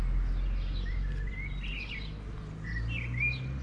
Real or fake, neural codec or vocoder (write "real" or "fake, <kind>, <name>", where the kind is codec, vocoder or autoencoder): real